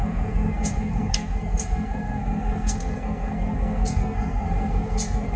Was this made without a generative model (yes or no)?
no